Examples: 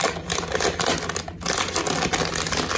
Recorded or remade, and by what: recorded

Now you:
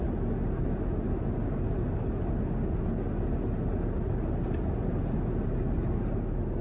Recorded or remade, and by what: recorded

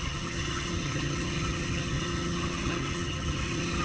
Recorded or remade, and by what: remade, vocoder, HiFi-GAN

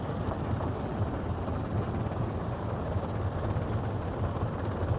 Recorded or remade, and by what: recorded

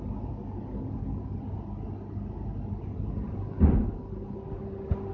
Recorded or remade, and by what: recorded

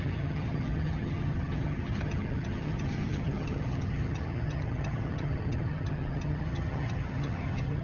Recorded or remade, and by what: remade, vocoder, HiFi-GAN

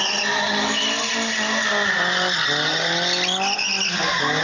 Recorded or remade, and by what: recorded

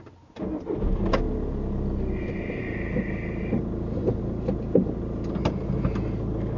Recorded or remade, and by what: recorded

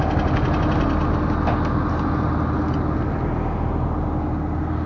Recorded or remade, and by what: recorded